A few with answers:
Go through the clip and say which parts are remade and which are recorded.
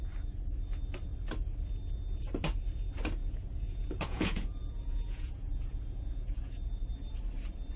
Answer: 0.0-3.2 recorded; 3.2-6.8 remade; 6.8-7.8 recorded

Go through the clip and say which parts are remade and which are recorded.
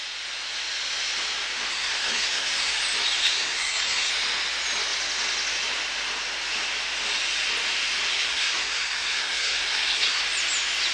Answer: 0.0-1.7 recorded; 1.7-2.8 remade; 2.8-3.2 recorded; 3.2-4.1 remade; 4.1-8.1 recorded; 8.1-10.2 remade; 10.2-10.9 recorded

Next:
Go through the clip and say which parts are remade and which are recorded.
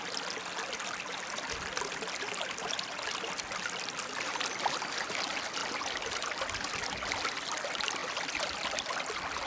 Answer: 0.0-9.5 recorded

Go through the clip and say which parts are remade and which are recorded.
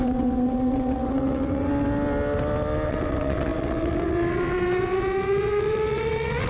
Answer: 0.0-1.7 remade; 1.7-2.9 recorded; 2.9-6.5 remade